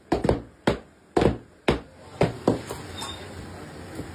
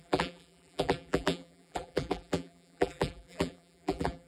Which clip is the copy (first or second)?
second